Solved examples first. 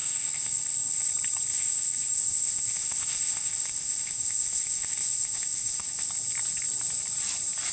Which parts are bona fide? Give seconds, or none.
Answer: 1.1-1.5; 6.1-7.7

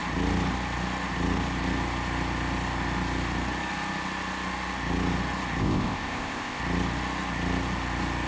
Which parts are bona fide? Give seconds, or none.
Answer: 0.0-5.6; 6.6-8.3

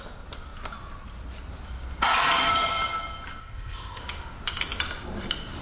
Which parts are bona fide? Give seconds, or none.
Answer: 0.0-3.4; 4.0-5.6

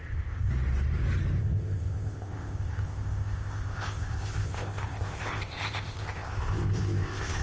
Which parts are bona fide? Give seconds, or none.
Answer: 0.5-1.4